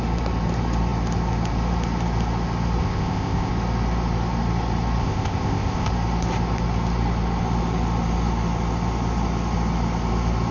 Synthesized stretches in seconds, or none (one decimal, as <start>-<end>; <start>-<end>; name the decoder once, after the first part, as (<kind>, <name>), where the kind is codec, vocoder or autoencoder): 2.8-3.5 (codec, ZipCodec); 5.0-5.9